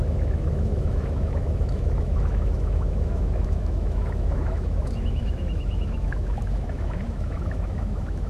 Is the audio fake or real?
fake